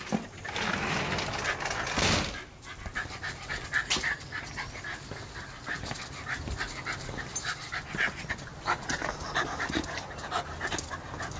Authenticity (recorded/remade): recorded